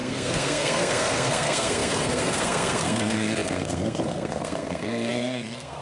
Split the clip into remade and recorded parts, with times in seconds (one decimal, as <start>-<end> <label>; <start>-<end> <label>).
0.0-5.8 remade